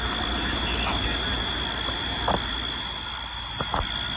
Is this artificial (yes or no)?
no